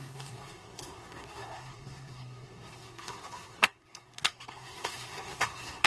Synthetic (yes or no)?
yes